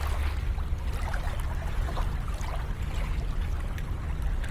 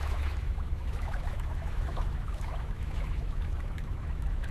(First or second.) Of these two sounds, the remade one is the second